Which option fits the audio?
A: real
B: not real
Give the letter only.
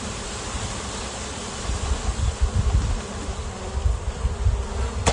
A